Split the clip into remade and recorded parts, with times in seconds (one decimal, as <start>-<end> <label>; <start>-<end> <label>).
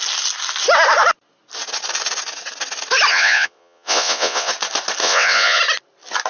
0.0-3.1 recorded; 3.1-4.5 remade; 4.5-5.0 recorded; 5.0-5.6 remade; 5.6-6.3 recorded